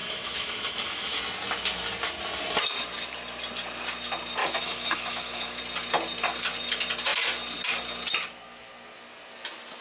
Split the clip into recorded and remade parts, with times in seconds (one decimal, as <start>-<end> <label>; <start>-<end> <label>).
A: 0.0-1.2 remade; 1.2-4.4 recorded; 4.4-5.6 remade; 5.6-9.8 recorded